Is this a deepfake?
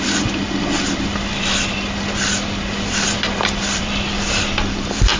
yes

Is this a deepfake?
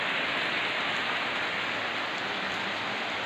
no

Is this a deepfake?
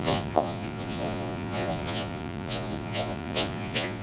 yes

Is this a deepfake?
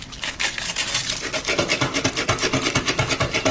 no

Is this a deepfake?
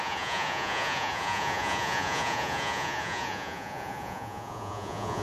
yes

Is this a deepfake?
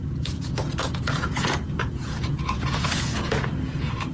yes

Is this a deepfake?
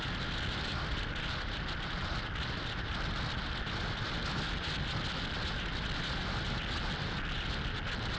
no